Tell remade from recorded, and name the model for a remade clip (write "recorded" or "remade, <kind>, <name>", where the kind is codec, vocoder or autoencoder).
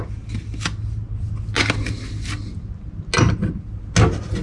recorded